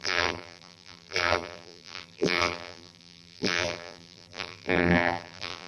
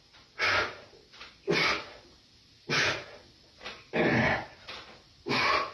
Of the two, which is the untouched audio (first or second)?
second